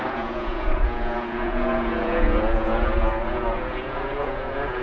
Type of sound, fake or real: fake